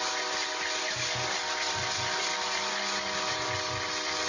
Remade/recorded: recorded